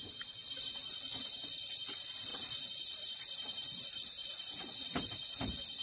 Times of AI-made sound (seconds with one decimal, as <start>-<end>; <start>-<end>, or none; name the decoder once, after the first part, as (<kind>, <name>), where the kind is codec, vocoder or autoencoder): 0.4-1.0 (vocoder, BigVGAN v2); 2.3-5.0